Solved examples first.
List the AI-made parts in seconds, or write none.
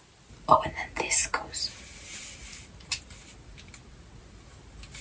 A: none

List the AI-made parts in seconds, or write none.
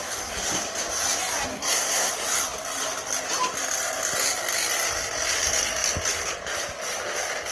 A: 1.5-2.1 (codec, SNAC)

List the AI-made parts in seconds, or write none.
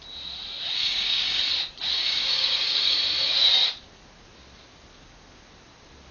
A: 0.8-1.4 (codec, DAC); 2.0-3.0